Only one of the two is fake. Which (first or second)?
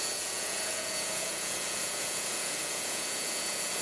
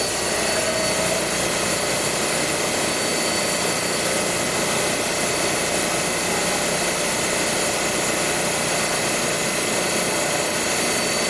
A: first